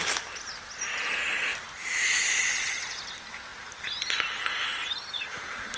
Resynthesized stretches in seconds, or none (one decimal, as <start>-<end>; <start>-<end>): none